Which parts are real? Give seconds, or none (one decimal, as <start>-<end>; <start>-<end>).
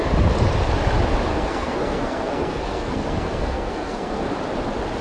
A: 0.0-1.3; 4.3-5.0